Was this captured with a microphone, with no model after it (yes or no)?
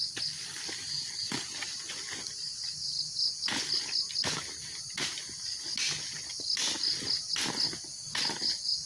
yes